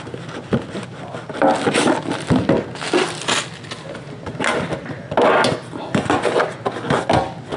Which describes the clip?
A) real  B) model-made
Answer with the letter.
A